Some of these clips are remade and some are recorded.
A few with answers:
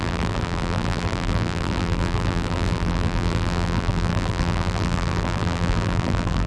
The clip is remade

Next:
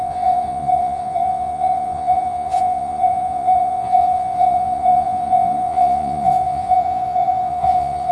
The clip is remade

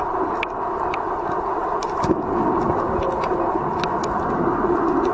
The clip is recorded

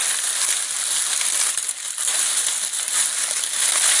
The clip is recorded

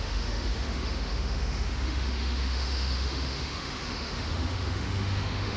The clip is remade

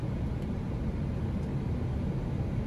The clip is recorded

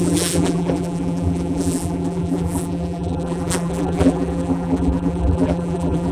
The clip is remade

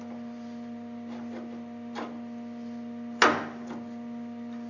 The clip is recorded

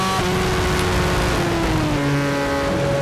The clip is recorded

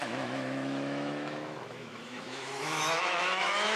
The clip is remade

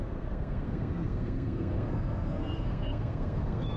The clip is remade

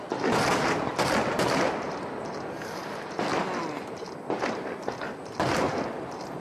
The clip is recorded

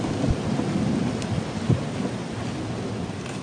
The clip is recorded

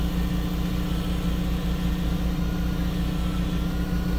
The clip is recorded